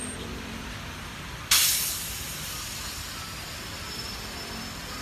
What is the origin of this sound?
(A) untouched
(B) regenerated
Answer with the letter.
A